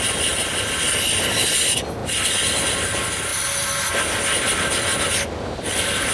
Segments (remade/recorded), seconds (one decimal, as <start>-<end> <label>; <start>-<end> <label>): 0.0-6.1 recorded